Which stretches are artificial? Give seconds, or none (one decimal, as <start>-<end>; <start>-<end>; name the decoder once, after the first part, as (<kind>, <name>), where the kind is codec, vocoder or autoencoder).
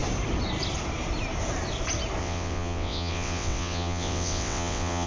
2.2-5.1 (vocoder, WaveNeXt)